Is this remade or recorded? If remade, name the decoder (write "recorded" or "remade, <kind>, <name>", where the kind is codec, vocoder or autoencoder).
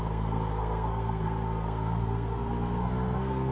remade, codec, SNAC